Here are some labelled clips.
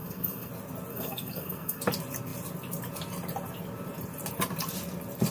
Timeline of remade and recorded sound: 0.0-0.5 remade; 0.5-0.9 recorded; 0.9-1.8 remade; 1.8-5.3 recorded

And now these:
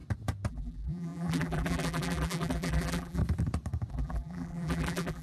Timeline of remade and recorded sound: 0.0-0.5 recorded; 0.5-3.2 remade; 3.2-3.9 recorded; 3.9-5.2 remade

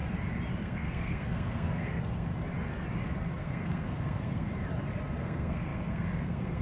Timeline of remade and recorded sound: 0.0-0.6 recorded; 0.6-2.3 remade; 2.3-3.4 recorded; 3.4-4.5 remade; 4.5-5.2 recorded; 5.2-6.6 remade